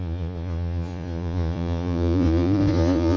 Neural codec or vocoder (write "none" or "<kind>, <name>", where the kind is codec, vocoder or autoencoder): vocoder, Vocos